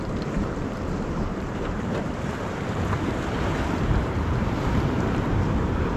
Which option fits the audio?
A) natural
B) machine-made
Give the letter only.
B